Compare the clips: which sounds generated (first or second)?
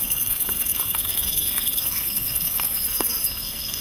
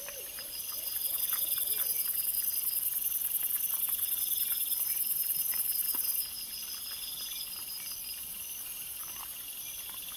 first